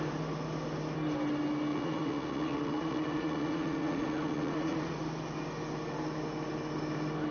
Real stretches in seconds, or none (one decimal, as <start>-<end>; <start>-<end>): 0.0-1.7; 5.0-7.3